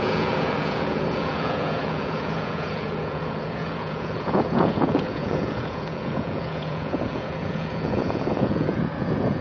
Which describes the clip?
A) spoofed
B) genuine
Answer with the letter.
A